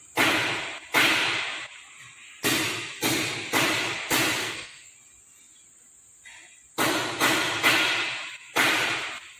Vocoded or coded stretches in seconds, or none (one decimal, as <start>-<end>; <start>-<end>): 4.4-4.9